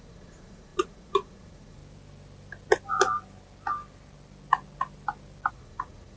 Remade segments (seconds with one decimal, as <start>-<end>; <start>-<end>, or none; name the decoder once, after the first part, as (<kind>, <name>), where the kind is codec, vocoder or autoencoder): 0.0-1.8 (vocoder, Vocos); 5.5-6.2

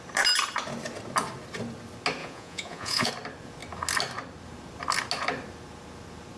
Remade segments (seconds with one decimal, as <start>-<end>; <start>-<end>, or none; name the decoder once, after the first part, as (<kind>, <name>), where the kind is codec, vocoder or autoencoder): 2.2-3.1 (vocoder, Vocos)

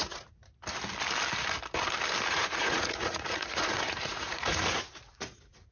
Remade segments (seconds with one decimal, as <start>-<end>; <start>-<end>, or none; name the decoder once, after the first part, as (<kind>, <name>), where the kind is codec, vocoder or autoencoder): 0.0-0.4 (vocoder, Vocos); 2.3-5.7

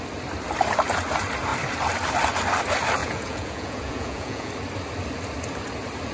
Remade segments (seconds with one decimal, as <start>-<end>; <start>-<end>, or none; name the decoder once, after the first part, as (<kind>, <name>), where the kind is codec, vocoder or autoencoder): 3.0-4.5 (vocoder, Vocos)